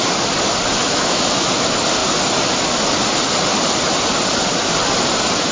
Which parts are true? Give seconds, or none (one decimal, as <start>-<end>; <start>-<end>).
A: 0.0-0.8; 1.5-5.5

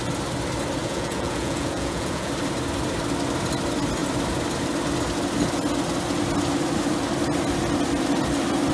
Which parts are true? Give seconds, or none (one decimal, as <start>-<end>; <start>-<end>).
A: 0.0-0.8; 2.3-8.7